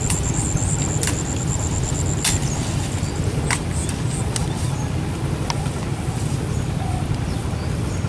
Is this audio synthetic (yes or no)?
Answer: no